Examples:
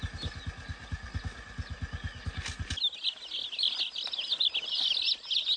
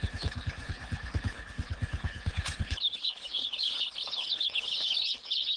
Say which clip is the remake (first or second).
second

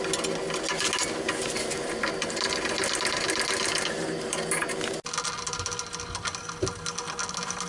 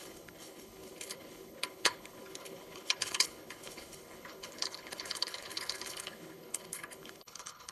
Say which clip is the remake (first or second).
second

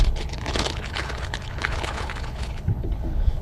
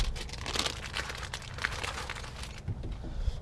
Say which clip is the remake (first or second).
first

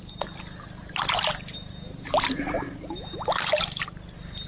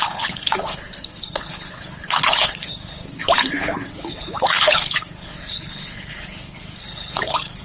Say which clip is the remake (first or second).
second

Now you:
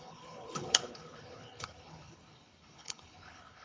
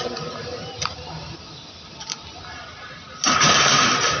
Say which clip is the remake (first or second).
first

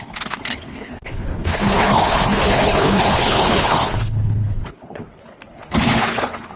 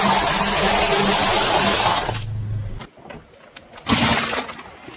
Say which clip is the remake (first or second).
first